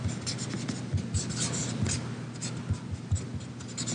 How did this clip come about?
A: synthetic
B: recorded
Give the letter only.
B